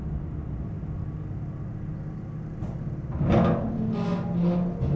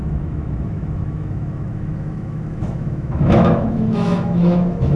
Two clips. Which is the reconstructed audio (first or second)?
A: second